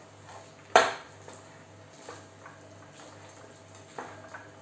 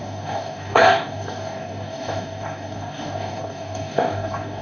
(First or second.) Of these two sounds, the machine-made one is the second